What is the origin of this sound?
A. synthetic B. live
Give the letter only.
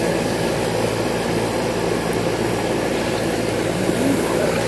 B